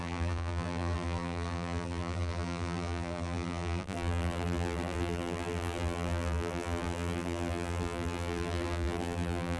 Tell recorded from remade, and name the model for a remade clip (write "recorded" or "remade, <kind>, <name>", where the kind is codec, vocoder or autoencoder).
remade, vocoder, BigVGAN v2